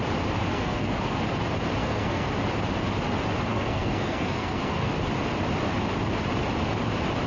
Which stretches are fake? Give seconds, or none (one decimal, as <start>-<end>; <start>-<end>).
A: 0.5-1.2; 1.8-2.3; 3.5-4.9

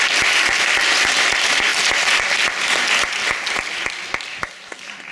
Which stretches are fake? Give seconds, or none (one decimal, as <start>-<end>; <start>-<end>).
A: none

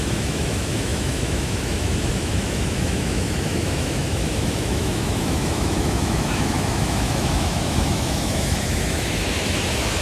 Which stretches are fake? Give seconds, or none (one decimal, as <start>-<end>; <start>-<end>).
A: 0.0-10.0

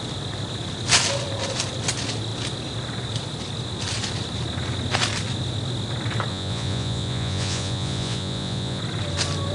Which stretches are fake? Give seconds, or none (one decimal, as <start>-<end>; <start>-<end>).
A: 6.3-8.8

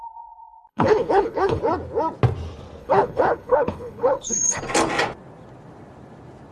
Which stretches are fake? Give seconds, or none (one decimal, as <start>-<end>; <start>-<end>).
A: 0.7-1.6; 2.8-4.6

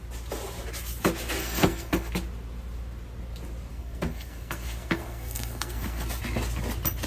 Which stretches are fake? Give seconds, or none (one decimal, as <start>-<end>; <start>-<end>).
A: 1.4-2.1; 3.7-6.2

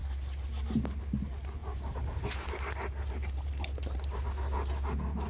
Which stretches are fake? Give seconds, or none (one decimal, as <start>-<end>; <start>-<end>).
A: 0.0-0.6; 1.6-4.2